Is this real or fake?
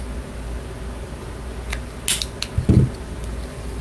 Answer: real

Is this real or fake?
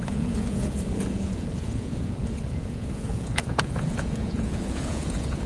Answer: fake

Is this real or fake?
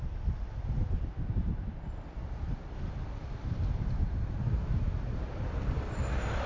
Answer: real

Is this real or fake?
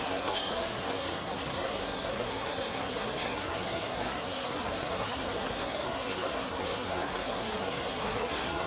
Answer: fake